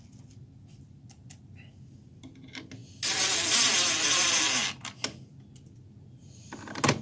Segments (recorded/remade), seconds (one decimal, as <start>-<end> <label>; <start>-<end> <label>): 0.0-7.0 recorded